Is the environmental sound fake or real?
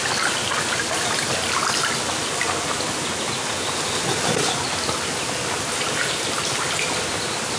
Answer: real